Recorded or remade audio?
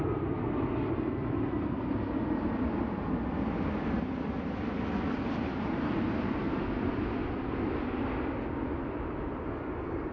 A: recorded